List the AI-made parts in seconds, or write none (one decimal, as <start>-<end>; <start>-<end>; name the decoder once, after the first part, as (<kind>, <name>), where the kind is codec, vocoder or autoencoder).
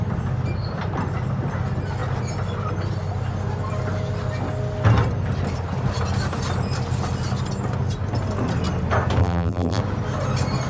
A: 9.2-9.8 (vocoder, BigVGAN v2)